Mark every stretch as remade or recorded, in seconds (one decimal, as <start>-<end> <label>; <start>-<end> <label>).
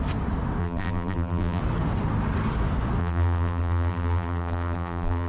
0.0-0.6 recorded; 0.6-1.6 remade; 1.6-3.0 recorded; 3.0-5.3 remade